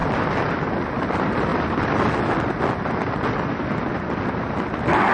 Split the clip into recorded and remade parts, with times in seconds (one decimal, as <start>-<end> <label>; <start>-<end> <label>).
0.0-5.1 recorded

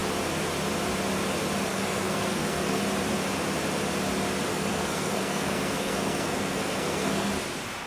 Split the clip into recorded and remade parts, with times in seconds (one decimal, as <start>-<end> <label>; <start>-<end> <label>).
0.0-1.7 recorded; 1.7-2.8 remade; 2.8-4.5 recorded; 4.5-7.3 remade; 7.3-7.9 recorded

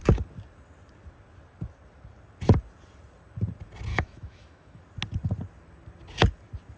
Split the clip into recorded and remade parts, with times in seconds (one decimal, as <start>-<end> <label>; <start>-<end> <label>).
0.0-3.9 recorded; 3.9-4.8 remade; 4.8-6.8 recorded

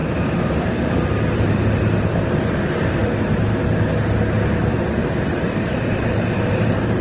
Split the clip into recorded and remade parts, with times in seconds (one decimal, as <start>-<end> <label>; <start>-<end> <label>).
0.0-1.0 recorded; 1.0-3.0 remade; 3.0-4.9 recorded; 4.9-7.0 remade